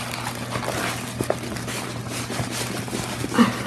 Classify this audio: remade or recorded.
recorded